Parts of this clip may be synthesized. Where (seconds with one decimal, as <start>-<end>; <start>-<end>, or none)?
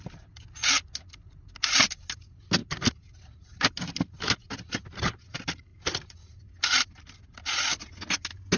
none